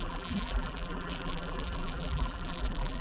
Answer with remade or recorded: remade